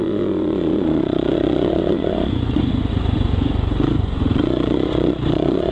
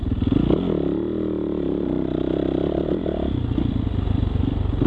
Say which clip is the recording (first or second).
second